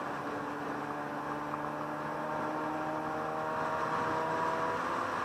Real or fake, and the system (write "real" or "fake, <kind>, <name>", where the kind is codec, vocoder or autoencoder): real